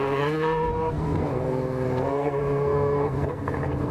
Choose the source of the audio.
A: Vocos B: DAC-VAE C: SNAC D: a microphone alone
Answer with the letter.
C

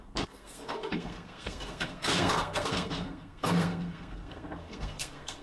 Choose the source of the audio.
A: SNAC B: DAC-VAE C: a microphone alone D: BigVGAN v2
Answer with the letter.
A